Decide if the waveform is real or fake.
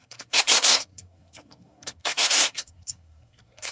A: fake